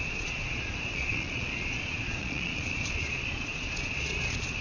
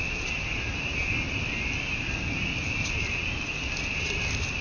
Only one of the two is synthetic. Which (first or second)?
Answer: first